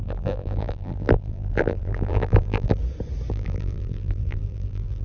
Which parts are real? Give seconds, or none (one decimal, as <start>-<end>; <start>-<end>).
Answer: 2.8-3.3